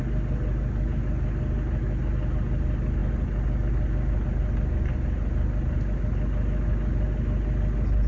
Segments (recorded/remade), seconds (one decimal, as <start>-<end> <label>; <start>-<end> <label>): 0.0-8.1 recorded